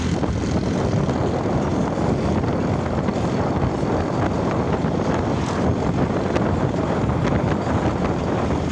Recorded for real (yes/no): yes